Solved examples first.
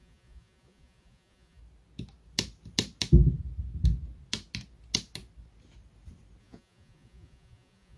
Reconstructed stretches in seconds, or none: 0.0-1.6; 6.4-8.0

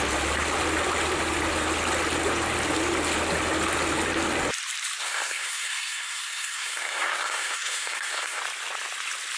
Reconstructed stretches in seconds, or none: 5.0-8.4

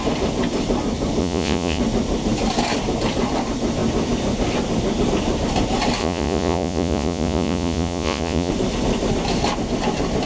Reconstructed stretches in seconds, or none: 1.2-1.8; 6.0-8.5

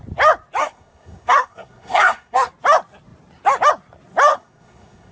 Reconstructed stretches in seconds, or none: 0.6-2.5; 4.3-5.1